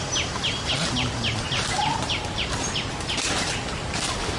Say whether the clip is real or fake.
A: real